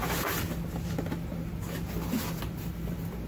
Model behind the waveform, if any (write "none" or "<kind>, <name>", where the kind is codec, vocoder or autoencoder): none